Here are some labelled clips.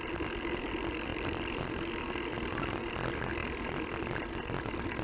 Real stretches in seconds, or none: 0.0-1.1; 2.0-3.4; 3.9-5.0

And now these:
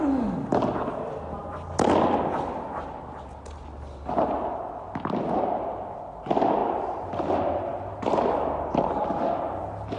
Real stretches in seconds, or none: 0.0-10.0

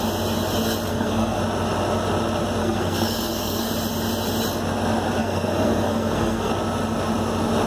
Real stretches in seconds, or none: 0.0-0.9; 1.4-2.6; 3.7-5.2; 6.5-7.7

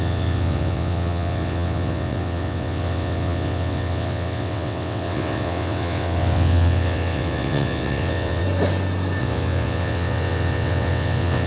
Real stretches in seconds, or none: 8.4-9.2

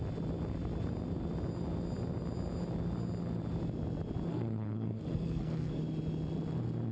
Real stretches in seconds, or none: 0.0-4.3; 5.8-6.9